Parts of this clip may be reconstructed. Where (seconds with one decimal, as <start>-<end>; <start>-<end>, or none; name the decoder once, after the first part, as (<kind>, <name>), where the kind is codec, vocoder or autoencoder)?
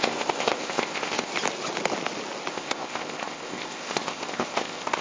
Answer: 0.0-1.3 (codec, ZipCodec); 2.5-5.0